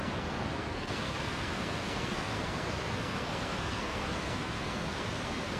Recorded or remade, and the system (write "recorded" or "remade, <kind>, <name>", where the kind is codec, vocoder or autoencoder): remade, codec, SNAC